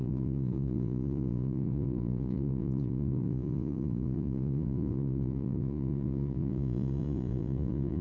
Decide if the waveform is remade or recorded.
remade